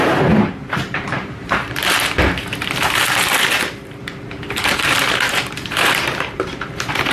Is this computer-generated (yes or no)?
yes